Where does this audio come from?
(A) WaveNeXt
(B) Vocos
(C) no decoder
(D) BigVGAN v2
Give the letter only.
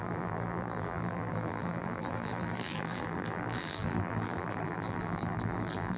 D